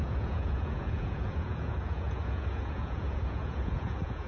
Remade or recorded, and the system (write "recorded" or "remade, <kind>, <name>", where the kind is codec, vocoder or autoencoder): remade, vocoder, Vocos